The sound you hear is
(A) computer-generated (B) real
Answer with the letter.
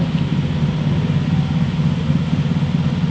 B